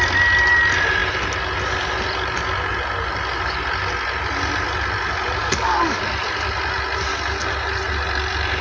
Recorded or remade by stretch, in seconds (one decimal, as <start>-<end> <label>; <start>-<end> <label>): 0.0-5.4 recorded; 5.4-6.0 remade; 6.0-8.6 recorded